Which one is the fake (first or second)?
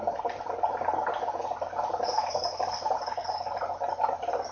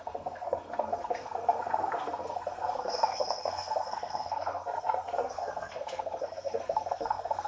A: second